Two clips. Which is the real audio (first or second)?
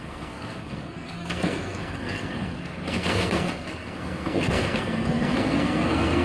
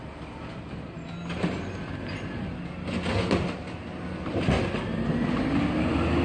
second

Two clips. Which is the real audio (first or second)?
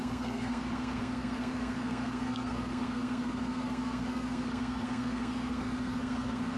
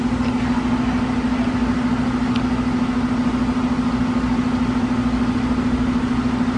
second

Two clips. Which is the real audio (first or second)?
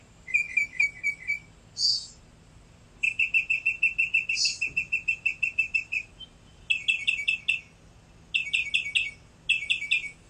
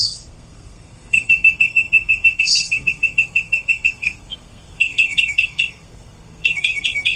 first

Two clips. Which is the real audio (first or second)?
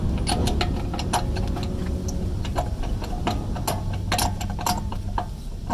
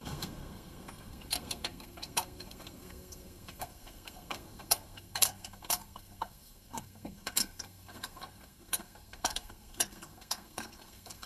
first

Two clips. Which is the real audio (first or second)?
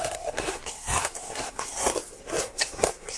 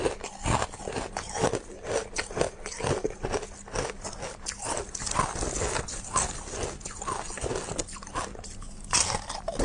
second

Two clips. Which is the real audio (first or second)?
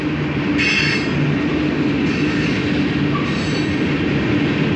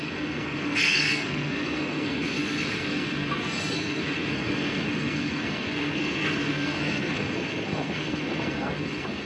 first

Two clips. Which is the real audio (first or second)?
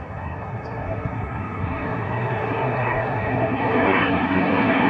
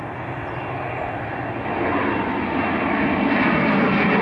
second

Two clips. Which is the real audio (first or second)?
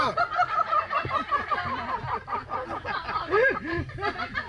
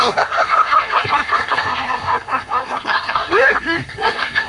first